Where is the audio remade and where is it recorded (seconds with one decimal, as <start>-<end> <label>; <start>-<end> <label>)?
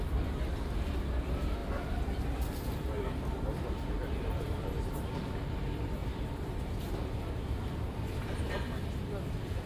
0.0-6.0 recorded; 6.0-7.3 remade; 7.3-9.7 recorded